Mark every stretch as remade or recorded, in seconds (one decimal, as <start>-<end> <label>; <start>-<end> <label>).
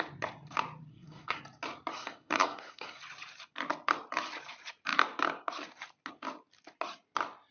0.0-0.9 recorded; 0.9-1.4 remade; 1.4-1.9 recorded; 1.9-3.0 remade; 3.0-7.5 recorded